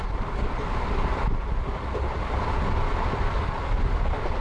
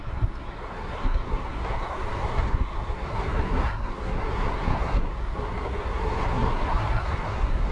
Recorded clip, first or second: first